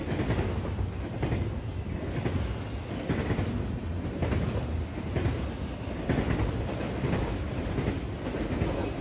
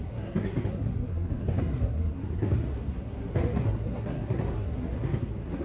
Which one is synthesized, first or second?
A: second